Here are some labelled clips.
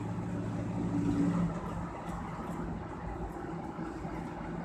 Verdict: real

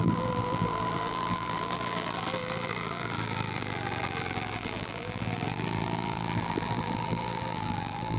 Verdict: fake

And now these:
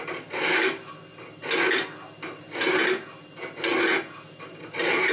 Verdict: real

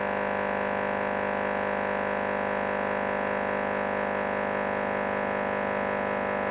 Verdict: real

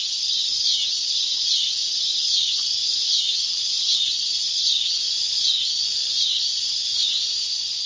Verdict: fake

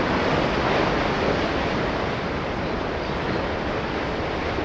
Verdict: real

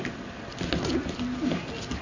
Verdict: real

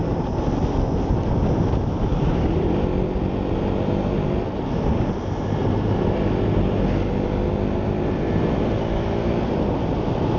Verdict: real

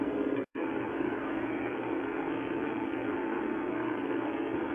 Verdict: fake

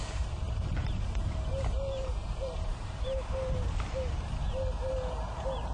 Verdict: fake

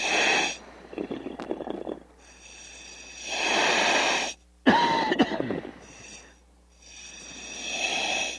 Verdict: real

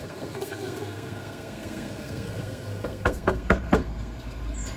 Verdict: fake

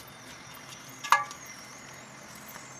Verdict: real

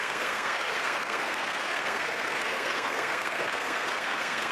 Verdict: fake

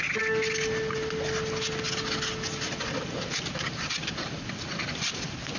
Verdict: real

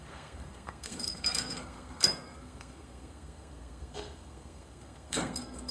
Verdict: fake